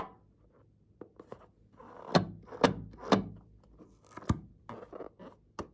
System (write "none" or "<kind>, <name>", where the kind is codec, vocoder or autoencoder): none